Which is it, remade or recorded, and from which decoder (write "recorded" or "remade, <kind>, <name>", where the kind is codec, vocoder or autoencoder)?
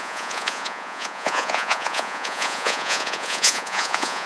remade, vocoder, Vocos